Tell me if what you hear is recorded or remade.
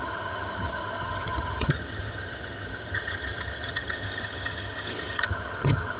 remade